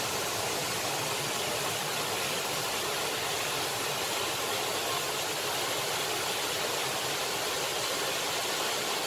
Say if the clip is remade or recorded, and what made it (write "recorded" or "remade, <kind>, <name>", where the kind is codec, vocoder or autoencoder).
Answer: recorded